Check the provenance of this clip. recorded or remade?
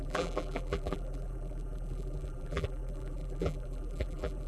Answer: remade